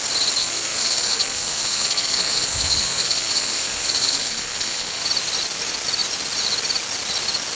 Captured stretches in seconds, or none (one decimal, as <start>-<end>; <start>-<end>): 0.0-0.4; 5.0-7.6